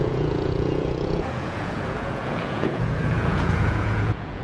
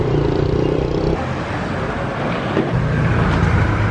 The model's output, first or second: first